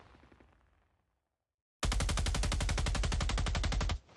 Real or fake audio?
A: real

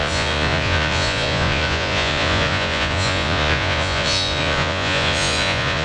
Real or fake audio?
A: fake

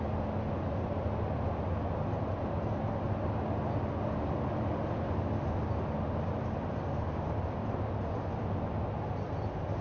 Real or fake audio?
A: real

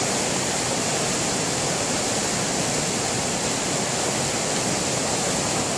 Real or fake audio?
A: real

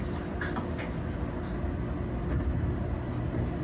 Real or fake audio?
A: real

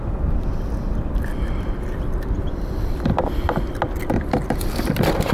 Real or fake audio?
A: real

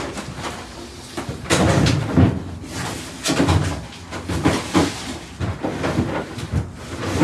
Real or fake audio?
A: real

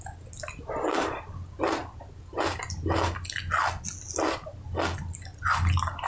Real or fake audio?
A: real